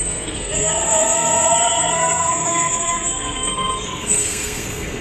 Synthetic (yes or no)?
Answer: yes